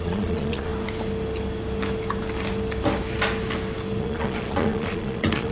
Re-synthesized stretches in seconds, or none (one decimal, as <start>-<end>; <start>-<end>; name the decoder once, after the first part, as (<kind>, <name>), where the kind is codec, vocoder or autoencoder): 0.0-0.7 (vocoder, Vocos); 4.0-5.5